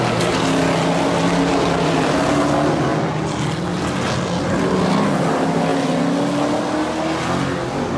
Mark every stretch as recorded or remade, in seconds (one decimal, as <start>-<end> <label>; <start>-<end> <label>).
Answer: 0.0-8.0 recorded